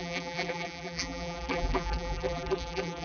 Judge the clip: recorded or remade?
remade